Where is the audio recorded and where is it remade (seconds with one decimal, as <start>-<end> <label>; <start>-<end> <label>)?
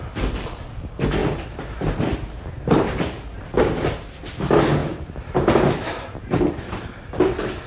0.0-1.2 recorded; 1.2-4.0 remade; 4.0-4.8 recorded; 4.8-6.5 remade; 6.5-7.7 recorded